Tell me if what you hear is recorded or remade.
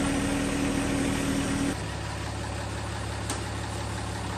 recorded